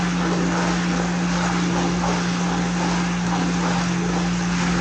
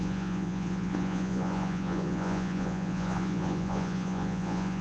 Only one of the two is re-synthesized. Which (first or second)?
second